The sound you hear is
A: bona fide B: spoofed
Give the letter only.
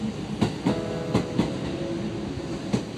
A